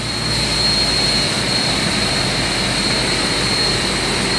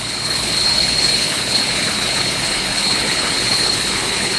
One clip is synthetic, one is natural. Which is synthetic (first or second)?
second